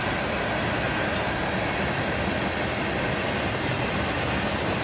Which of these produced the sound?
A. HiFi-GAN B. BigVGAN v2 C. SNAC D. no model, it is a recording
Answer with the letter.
D